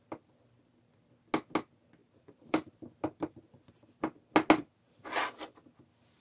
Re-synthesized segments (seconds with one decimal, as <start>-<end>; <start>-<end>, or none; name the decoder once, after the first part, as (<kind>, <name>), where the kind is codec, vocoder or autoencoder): 2.0-2.7 (vocoder, BigVGAN v2)